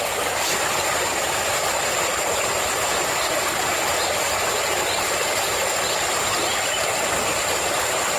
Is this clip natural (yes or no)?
yes